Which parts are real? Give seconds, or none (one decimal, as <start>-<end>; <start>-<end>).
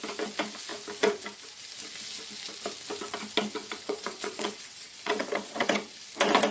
0.0-3.6; 6.0-6.5